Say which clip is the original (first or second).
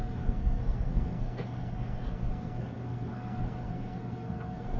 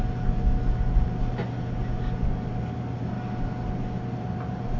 second